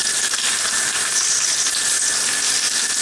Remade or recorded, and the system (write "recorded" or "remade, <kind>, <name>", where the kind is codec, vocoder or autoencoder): recorded